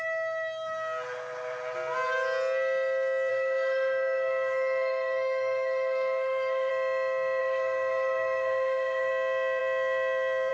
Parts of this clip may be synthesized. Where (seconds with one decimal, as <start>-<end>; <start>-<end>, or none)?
3.3-6.7; 7.4-9.1

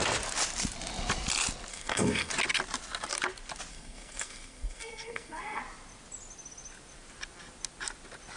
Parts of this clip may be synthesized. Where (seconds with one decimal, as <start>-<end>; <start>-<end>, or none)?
1.7-2.3; 3.7-5.6

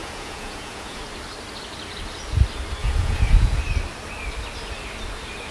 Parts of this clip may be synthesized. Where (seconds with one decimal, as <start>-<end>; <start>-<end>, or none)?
0.0-1.0; 2.8-3.6

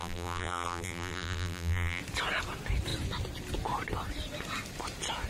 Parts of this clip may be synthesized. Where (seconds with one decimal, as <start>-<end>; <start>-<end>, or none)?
0.0-2.0

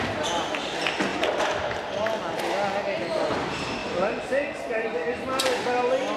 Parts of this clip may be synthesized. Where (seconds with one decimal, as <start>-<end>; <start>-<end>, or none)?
none

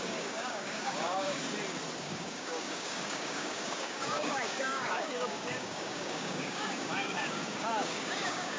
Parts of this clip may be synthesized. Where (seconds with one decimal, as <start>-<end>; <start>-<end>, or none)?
0.0-1.4; 2.0-8.6

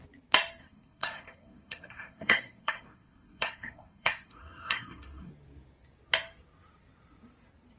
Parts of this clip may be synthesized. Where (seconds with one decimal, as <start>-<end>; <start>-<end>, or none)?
0.6-5.3